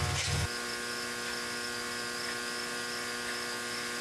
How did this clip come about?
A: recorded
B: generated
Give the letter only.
A